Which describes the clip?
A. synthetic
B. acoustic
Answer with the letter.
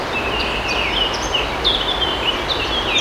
B